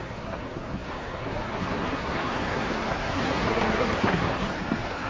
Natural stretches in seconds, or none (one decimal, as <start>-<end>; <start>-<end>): none